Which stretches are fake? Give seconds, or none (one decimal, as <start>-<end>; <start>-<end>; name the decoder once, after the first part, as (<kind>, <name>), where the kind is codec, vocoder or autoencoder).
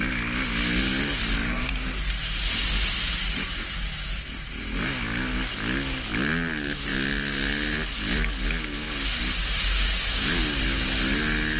none